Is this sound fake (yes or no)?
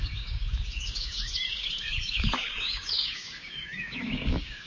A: yes